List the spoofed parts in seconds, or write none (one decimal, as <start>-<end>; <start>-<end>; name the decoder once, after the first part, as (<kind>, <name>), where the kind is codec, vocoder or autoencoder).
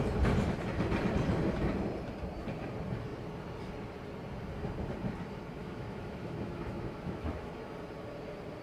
5.6-7.5 (autoencoder, DAC-VAE)